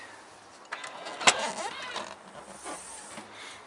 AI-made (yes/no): no